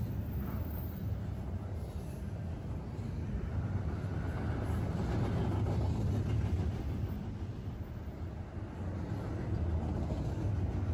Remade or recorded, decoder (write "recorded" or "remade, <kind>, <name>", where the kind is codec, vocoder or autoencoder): recorded